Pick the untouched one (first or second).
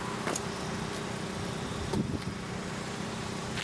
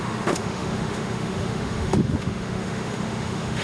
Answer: first